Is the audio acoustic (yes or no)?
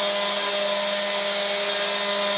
yes